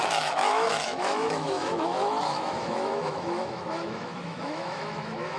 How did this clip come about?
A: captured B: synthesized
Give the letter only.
B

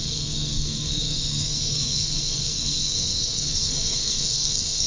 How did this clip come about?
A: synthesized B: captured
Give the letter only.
A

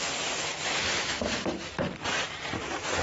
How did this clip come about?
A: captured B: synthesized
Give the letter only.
B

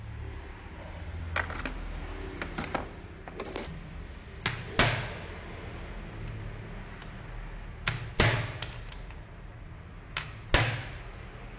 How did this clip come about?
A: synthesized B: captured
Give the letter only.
B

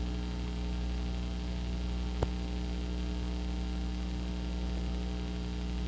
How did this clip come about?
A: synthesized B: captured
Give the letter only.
B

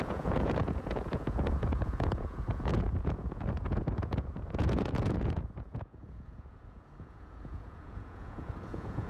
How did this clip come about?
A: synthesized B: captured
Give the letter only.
A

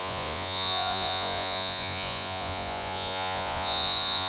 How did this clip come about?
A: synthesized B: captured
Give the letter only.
A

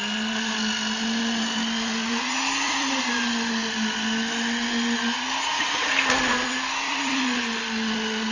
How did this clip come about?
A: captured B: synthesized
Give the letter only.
A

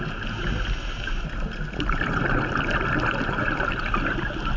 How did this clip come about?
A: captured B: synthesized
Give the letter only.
A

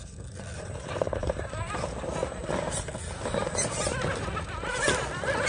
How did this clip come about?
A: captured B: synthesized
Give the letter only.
A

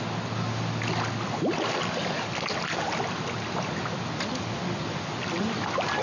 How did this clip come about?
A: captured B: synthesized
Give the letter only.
A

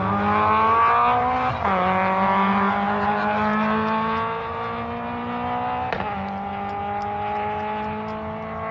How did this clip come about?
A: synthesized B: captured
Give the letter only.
B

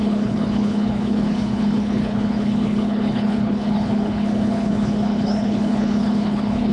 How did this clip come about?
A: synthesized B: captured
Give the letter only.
A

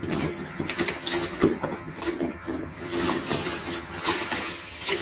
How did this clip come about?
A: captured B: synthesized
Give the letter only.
B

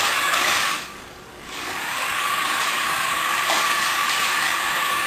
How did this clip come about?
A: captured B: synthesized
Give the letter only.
B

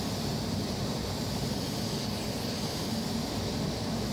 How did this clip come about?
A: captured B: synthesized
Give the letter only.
B